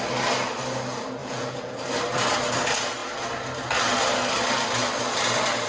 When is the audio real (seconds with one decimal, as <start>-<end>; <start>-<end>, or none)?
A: 0.0-1.2; 1.7-5.7